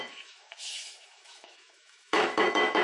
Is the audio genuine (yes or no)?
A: no